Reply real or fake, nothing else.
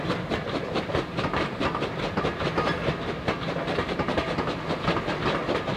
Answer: real